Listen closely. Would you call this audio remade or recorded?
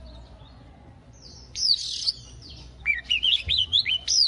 remade